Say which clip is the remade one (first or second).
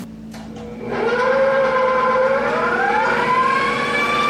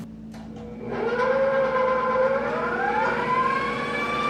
first